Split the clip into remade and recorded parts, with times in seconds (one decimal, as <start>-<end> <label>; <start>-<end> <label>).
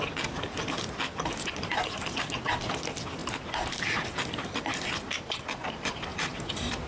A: 0.0-3.2 recorded; 3.2-4.6 remade; 4.6-6.1 recorded; 6.1-6.9 remade